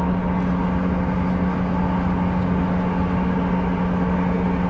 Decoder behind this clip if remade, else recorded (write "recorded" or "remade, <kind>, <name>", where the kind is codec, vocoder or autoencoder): recorded